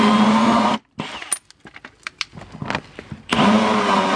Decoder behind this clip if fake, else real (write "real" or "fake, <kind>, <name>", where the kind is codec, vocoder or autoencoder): real